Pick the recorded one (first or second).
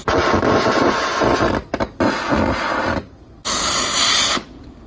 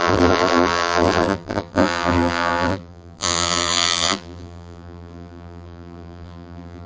first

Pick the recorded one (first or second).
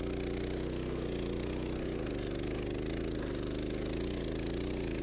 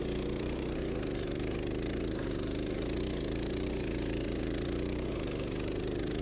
first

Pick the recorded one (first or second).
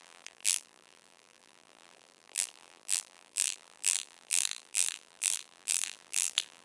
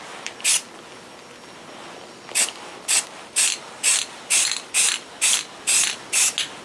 second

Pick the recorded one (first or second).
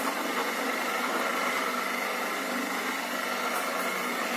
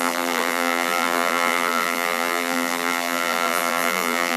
first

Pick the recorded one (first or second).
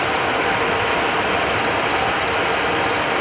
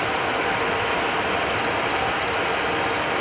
second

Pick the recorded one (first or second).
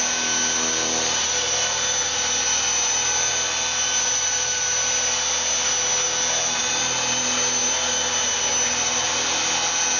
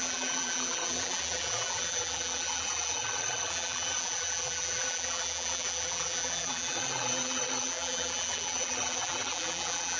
first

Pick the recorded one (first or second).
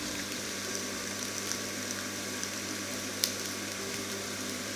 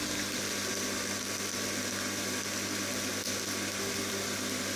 second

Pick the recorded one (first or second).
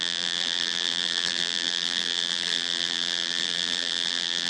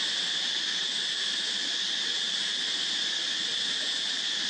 second